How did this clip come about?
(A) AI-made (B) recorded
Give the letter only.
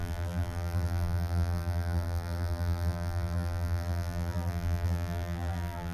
A